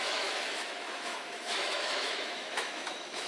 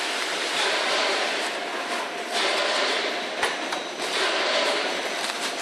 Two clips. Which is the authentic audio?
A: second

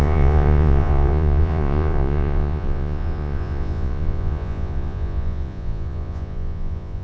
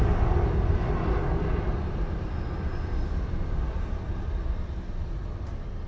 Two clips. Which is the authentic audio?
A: second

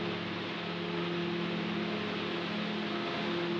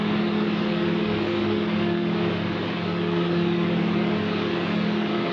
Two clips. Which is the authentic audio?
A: first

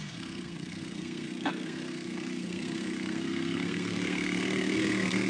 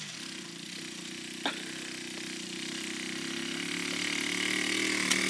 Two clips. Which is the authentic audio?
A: second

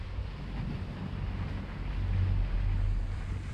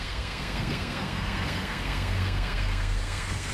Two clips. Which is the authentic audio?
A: first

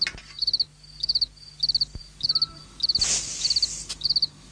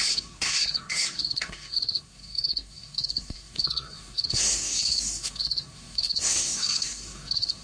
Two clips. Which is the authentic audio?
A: first